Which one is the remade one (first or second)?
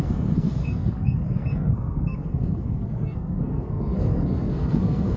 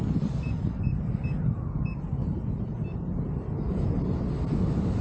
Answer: first